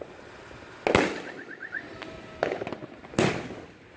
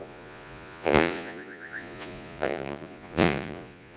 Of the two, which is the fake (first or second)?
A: second